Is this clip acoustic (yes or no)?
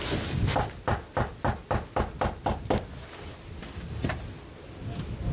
yes